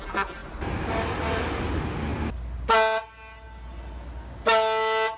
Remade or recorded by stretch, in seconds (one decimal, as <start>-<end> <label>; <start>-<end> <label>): 0.0-5.2 recorded